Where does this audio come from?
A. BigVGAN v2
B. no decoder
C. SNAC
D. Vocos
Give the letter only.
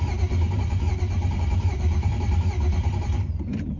A